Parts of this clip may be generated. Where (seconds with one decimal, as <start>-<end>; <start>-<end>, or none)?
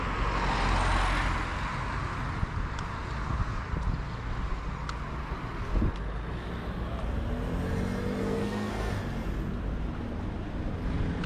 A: 8.2-8.9